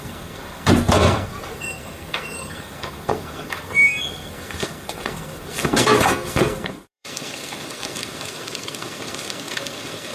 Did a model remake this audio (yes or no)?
yes